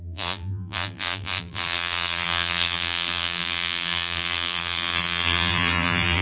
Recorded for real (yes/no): no